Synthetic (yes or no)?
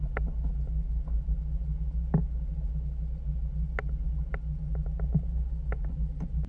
no